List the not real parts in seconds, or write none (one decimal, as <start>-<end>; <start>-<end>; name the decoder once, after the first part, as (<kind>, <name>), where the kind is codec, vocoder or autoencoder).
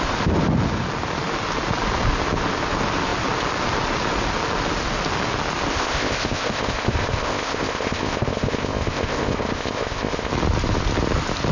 5.7-10.3 (codec, ZipCodec)